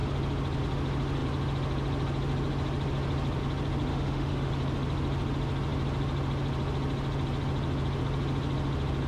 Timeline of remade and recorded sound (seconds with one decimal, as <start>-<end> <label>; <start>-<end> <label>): 0.0-3.9 recorded; 3.9-4.5 remade; 4.5-9.1 recorded